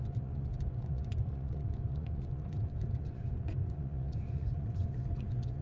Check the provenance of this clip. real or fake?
fake